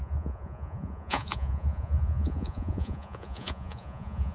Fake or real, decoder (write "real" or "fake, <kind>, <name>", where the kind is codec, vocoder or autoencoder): fake, vocoder, Vocos